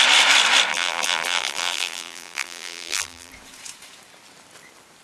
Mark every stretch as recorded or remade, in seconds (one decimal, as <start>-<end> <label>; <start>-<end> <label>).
0.0-0.7 recorded; 0.7-3.3 remade; 3.3-5.0 recorded